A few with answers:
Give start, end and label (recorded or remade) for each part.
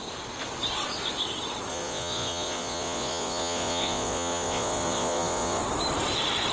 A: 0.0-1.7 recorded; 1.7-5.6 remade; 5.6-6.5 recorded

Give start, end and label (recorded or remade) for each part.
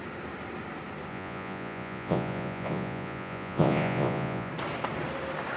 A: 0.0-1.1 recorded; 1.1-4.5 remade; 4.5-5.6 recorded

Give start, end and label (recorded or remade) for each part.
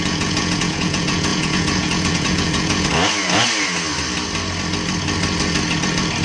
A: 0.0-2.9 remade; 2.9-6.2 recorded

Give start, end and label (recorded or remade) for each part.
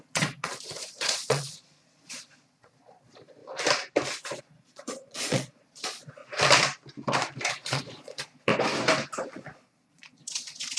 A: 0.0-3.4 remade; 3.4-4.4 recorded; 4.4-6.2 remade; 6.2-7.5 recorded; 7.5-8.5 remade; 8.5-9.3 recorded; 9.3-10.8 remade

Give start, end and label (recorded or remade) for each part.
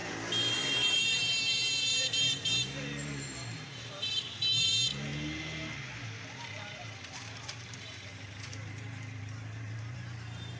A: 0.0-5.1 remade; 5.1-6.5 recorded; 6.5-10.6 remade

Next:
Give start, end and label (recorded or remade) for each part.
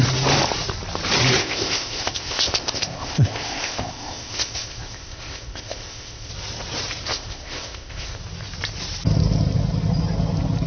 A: 0.0-1.4 recorded; 1.4-6.3 remade; 6.3-7.1 recorded; 7.1-8.2 remade; 8.2-10.7 recorded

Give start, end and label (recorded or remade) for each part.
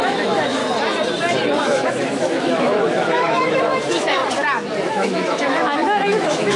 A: 0.0-0.6 remade; 0.6-1.6 recorded; 1.6-4.2 remade; 4.2-4.9 recorded; 4.9-6.6 remade